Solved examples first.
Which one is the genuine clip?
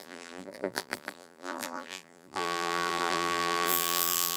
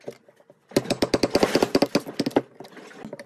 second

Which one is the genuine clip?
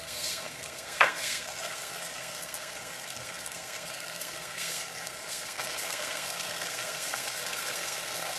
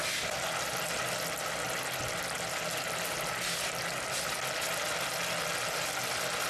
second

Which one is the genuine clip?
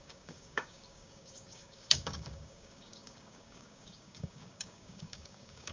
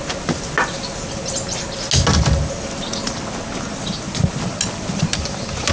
second